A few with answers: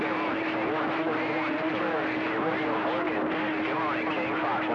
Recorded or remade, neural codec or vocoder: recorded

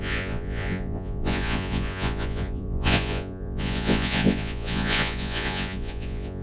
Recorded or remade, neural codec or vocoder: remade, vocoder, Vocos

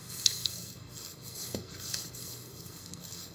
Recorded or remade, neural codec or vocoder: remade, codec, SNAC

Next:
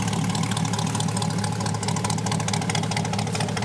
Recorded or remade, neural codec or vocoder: recorded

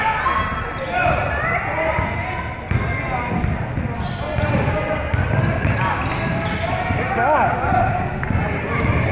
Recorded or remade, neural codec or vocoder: recorded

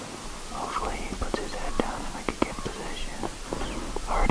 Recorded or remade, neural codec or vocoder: recorded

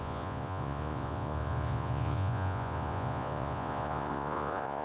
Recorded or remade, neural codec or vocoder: remade, vocoder, Vocos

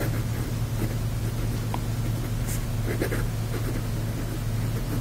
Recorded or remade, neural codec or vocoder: recorded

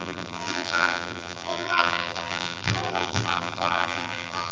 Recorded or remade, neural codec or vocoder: remade, vocoder, BigVGAN v2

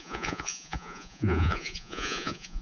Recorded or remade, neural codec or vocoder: remade, vocoder, Vocos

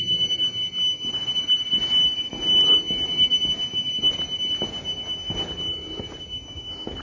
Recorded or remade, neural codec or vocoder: recorded